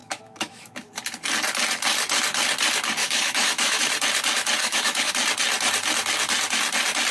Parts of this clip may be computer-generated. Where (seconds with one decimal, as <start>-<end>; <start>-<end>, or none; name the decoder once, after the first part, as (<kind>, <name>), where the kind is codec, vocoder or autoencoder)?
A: 0.0-0.9 (autoencoder, DAC-VAE); 3.0-3.8; 4.6-5.1